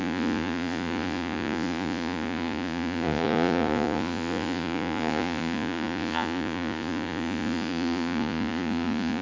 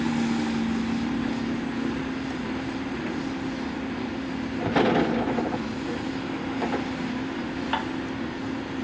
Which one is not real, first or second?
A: first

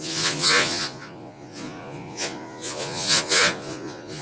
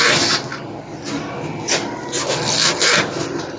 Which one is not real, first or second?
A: first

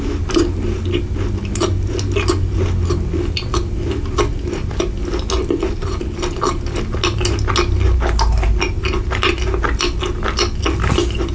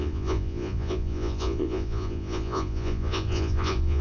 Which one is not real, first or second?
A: second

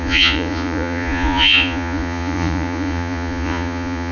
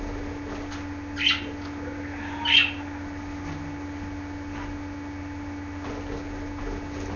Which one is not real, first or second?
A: first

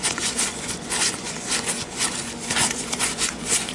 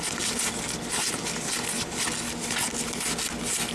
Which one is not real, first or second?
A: first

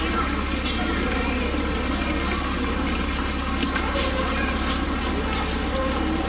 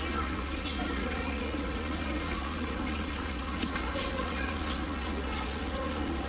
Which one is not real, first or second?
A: second